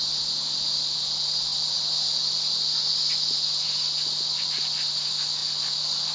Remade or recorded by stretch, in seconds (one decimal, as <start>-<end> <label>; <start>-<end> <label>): 0.0-6.1 recorded